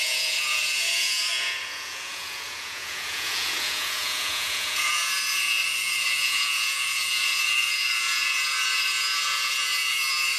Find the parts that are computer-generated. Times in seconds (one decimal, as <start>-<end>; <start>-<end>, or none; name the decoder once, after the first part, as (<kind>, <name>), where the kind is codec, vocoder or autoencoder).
0.0-10.4 (vocoder, Vocos)